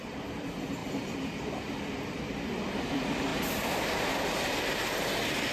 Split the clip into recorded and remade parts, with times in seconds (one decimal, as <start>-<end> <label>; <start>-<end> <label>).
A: 0.0-0.8 remade; 0.8-2.7 recorded; 2.7-3.3 remade; 3.3-4.1 recorded; 4.1-5.5 remade